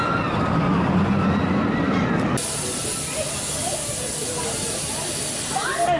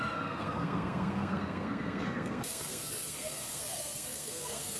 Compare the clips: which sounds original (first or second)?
first